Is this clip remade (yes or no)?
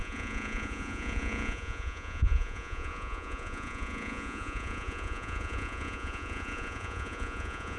yes